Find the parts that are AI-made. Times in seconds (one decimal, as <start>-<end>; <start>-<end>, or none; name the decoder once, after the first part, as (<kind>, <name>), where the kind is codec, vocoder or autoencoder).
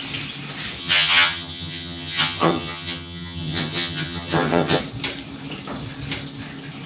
0.8-4.8 (vocoder, HiFi-GAN)